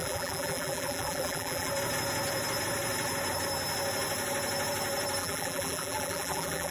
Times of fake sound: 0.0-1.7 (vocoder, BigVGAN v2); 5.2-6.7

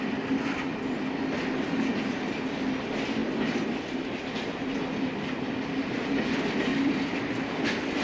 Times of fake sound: 6.7-7.3 (vocoder, BigVGAN v2)